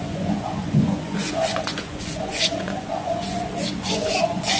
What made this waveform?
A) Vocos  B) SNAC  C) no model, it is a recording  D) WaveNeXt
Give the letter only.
A